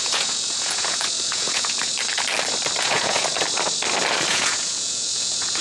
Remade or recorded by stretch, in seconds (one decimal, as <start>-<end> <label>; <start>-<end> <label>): 0.0-1.9 remade; 1.9-2.8 recorded; 2.8-3.3 remade; 3.3-4.3 recorded; 4.3-5.6 remade